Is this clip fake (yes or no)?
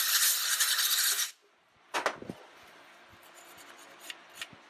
no